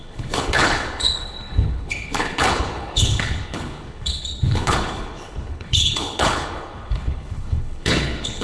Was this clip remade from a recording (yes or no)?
yes